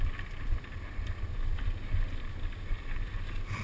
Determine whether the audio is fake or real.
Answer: real